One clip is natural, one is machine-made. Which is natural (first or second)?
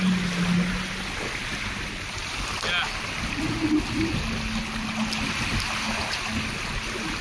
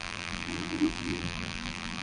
first